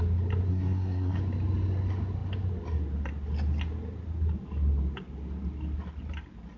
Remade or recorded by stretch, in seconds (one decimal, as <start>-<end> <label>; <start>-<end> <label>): 0.0-0.5 recorded; 0.5-1.2 remade; 1.2-6.6 recorded